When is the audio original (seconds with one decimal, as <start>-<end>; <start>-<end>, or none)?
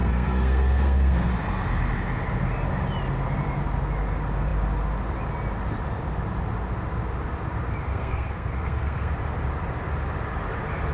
1.3-7.9; 9.1-10.9